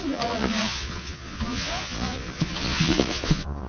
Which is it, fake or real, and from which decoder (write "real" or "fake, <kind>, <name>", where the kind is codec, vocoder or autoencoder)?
fake, vocoder, Vocos